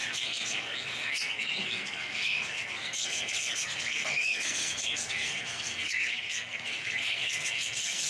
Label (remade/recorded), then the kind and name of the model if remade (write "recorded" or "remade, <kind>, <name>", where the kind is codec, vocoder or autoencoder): remade, codec, SNAC